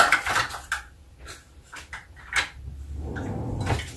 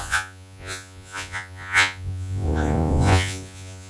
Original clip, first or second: first